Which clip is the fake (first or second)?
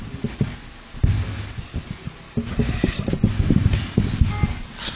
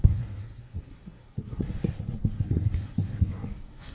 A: second